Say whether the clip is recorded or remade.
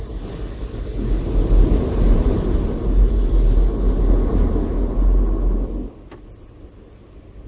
recorded